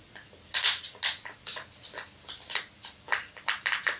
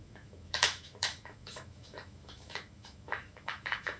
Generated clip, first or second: second